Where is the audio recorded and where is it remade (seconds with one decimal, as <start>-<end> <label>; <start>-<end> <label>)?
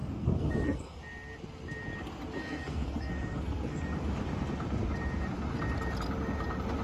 0.0-1.0 remade; 1.0-2.4 recorded; 2.4-3.8 remade; 3.8-6.8 recorded